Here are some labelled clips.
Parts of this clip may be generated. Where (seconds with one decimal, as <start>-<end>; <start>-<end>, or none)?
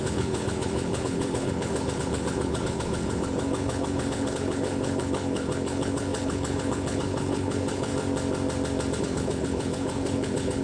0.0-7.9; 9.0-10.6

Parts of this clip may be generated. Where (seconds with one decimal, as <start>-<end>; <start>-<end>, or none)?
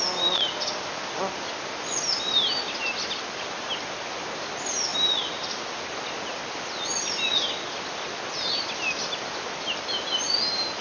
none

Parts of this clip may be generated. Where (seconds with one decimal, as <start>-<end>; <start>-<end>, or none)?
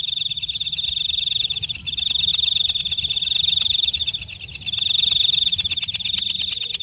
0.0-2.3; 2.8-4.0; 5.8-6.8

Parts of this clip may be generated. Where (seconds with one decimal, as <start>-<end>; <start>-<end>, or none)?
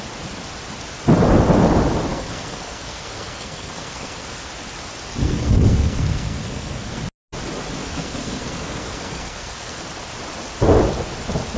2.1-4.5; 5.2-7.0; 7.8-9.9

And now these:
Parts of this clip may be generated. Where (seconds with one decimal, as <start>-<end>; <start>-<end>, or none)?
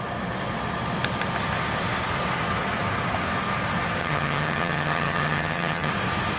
4.0-5.9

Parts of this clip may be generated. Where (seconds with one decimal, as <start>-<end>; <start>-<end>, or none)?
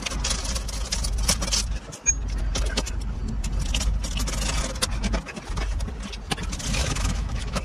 6.8-7.6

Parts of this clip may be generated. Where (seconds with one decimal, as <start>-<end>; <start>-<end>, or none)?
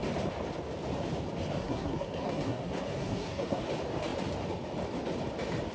1.6-3.6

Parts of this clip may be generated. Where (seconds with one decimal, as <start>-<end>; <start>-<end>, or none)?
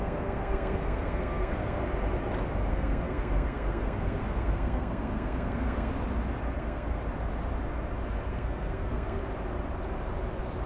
0.0-1.8; 2.7-5.9; 6.6-7.0; 8.3-9.2